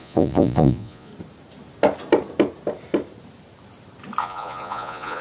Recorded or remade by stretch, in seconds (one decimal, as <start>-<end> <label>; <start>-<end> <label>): 0.0-1.1 remade; 1.1-4.2 recorded; 4.2-5.2 remade